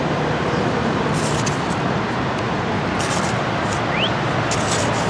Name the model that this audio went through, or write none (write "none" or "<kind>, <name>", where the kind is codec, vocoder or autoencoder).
none